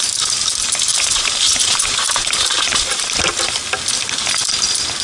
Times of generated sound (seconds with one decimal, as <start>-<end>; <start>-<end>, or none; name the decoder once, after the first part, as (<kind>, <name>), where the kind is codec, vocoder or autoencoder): 0.9-3.2 (vocoder, BigVGAN v2)